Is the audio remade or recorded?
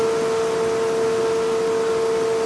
recorded